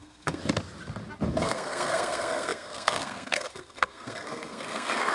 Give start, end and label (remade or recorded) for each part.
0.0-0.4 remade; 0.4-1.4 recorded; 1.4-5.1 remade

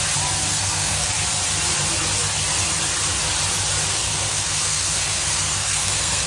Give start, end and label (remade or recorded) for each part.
0.0-0.5 recorded; 0.5-1.1 remade; 1.1-4.0 recorded; 4.0-6.3 remade

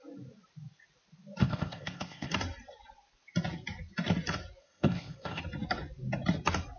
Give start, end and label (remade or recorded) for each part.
0.0-1.4 recorded; 1.4-2.3 remade; 2.3-4.6 recorded; 4.6-5.4 remade; 5.4-6.8 recorded

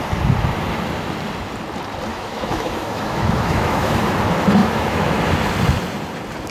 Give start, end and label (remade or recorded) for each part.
0.0-2.1 recorded; 2.1-4.0 remade; 4.0-4.6 recorded; 4.6-5.2 remade; 5.2-6.5 recorded

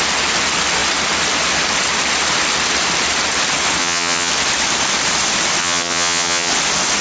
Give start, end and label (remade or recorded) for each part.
0.0-3.8 recorded; 3.8-4.3 remade; 4.3-5.6 recorded; 5.6-6.5 remade; 6.5-7.0 recorded

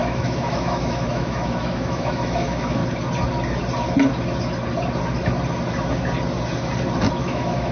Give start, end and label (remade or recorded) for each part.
0.0-2.8 remade; 2.8-7.1 recorded; 7.1-7.7 remade